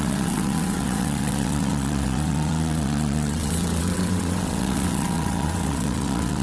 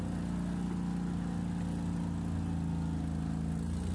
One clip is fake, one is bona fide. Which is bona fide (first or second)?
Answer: second